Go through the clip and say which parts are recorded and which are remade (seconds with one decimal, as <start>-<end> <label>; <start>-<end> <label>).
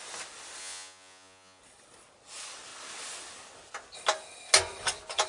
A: 0.0-0.6 recorded; 0.6-1.6 remade; 1.6-5.3 recorded